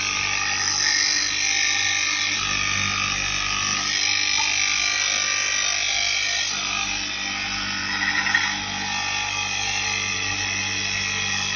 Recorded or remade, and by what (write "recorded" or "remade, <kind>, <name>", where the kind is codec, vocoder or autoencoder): recorded